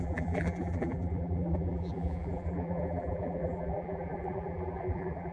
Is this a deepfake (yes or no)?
yes